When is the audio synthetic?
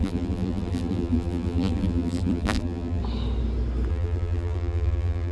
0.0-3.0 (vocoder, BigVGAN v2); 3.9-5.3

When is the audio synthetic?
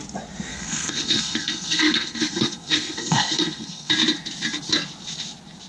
0.5-3.9 (codec, SNAC)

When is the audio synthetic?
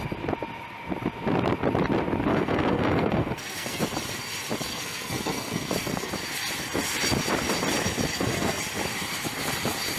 2.3-3.8 (codec, SNAC); 4.7-6.1; 8.1-8.6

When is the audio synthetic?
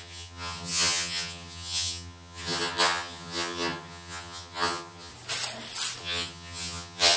0.0-5.1 (vocoder, HiFi-GAN); 6.0-7.2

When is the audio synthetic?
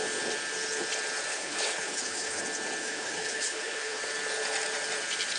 1.3-2.4 (codec, HILCodec); 2.8-4.0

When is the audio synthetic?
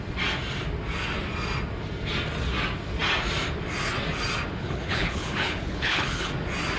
4.6-6.3 (codec, HILCodec)